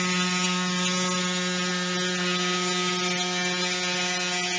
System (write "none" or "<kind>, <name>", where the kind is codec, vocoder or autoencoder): none